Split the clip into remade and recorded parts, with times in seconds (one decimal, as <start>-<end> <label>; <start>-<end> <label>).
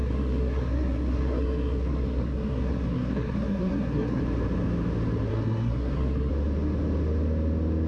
0.0-4.2 remade; 4.2-5.3 recorded; 5.3-6.3 remade; 6.3-7.9 recorded